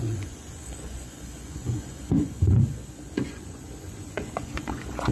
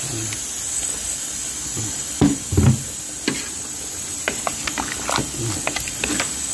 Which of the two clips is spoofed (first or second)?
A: first